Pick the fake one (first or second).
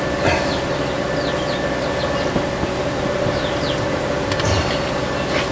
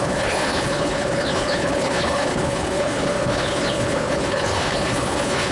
second